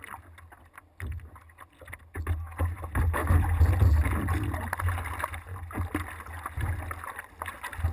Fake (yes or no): no